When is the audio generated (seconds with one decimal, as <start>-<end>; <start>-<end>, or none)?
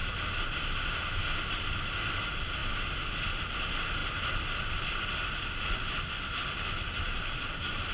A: 0.0-1.2